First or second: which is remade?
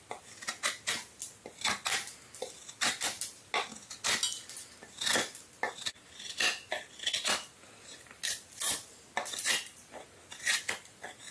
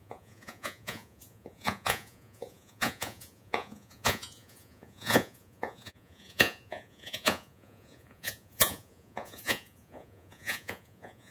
second